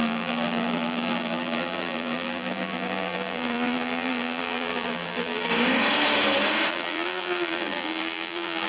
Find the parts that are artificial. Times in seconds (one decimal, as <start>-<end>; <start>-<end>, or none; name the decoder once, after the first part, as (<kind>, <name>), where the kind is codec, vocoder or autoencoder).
0.0-5.5 (vocoder, BigVGAN v2); 6.7-8.7